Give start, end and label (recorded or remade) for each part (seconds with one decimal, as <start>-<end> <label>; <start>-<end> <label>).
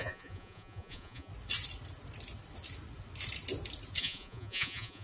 0.0-1.3 remade; 1.3-4.0 recorded; 4.0-5.0 remade